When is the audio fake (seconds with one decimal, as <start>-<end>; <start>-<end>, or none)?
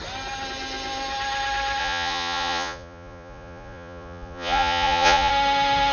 1.8-5.3